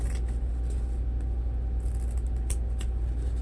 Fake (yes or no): no